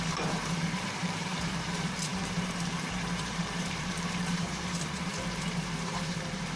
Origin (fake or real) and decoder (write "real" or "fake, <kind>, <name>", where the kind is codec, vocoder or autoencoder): fake, vocoder, BigVGAN v2